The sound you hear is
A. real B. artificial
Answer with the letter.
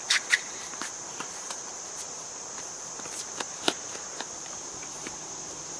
B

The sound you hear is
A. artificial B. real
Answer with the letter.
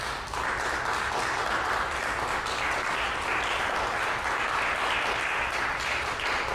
B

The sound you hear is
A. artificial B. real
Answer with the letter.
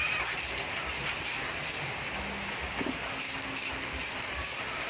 A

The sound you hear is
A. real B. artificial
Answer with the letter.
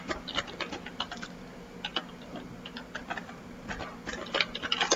A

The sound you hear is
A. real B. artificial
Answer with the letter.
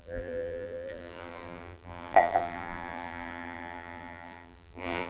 B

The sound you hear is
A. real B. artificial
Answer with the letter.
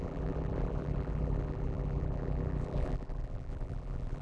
B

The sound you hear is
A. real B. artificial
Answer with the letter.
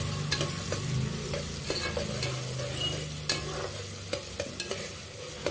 A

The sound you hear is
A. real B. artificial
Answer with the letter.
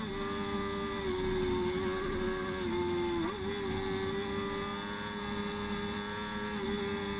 A